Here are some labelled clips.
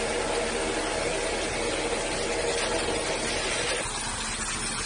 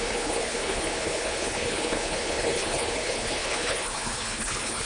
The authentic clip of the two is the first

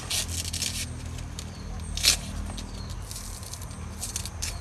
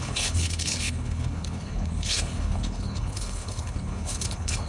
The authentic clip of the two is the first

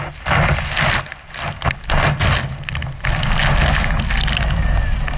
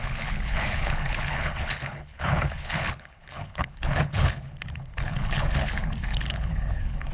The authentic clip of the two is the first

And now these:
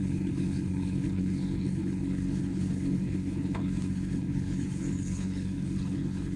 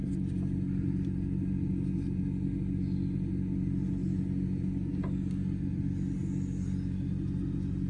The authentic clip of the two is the second